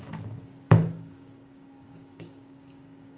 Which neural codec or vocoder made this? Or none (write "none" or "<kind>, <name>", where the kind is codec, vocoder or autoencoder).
codec, DAC